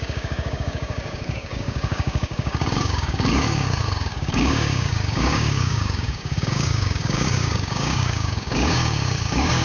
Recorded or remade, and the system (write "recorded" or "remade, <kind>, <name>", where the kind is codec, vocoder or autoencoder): remade, codec, DAC